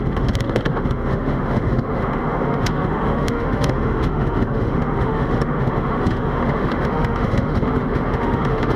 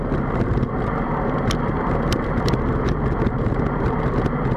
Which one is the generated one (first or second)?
first